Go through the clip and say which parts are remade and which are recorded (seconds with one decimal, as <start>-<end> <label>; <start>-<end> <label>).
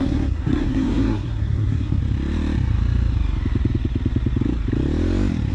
0.0-2.0 remade; 2.0-5.5 recorded